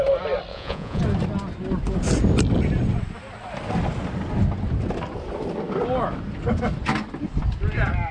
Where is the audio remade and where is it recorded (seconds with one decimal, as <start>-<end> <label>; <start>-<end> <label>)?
0.0-0.5 recorded; 0.5-1.0 remade; 1.0-8.1 recorded